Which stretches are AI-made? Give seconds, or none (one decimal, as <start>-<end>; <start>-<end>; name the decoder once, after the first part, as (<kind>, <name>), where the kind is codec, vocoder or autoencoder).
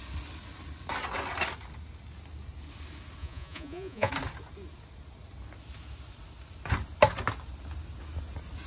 3.2-4.1 (vocoder, Vocos)